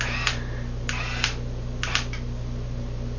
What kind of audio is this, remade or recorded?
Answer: recorded